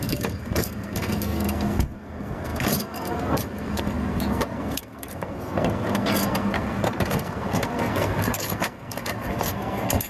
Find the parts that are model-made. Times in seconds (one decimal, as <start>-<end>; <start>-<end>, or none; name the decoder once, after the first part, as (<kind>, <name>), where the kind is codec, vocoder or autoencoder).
0.0-10.1 (codec, SNAC)